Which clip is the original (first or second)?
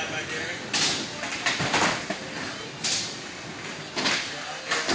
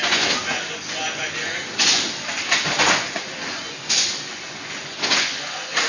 first